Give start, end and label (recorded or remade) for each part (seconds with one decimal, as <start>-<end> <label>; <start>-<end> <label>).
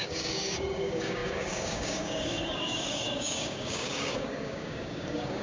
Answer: 0.0-5.4 remade